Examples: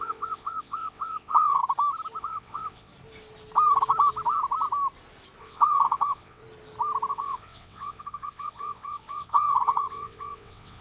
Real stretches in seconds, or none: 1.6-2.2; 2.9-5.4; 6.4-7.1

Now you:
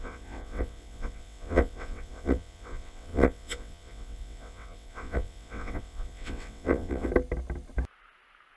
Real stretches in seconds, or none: 7.1-8.6